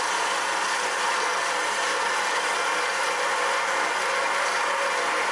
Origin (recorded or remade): recorded